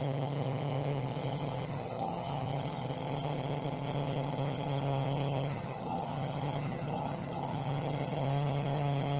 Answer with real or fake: fake